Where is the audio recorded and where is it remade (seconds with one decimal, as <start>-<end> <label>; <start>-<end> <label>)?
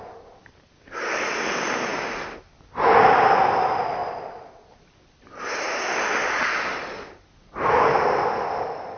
0.0-9.0 recorded